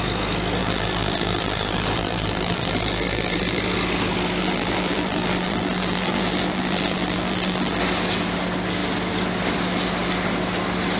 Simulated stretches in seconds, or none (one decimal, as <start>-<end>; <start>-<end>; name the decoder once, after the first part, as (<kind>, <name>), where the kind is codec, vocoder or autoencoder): 0.6-3.6 (vocoder, BigVGAN v2); 4.4-7.8